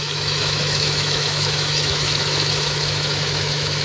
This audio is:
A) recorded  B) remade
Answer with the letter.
B